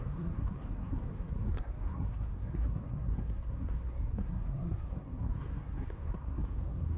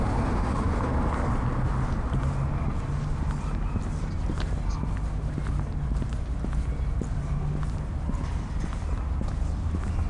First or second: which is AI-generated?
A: first